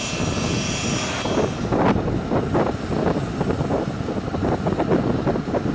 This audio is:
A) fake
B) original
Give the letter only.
B